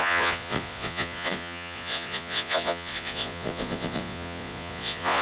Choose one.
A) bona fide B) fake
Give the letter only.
B